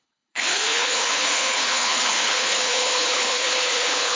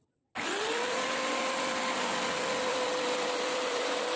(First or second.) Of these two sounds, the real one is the second